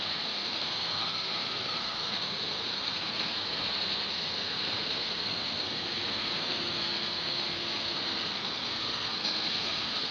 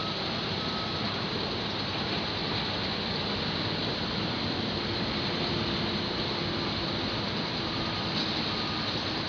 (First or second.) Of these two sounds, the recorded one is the second